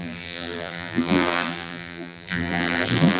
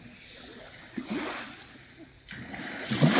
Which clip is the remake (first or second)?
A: first